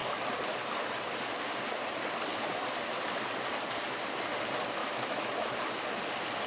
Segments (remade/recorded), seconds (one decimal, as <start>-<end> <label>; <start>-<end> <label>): 0.0-4.8 recorded; 4.8-5.7 remade; 5.7-6.5 recorded